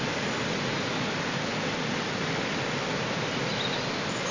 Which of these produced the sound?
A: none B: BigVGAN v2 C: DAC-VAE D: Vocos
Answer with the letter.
A